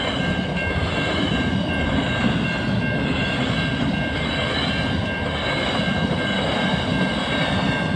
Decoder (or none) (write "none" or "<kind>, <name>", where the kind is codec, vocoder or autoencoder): none